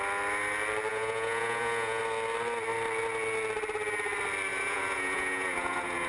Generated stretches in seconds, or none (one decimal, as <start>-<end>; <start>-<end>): 0.9-2.0; 4.5-6.1